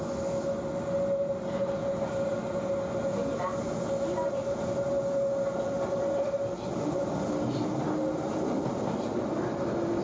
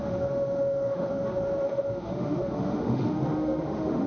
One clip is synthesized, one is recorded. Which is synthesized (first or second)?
second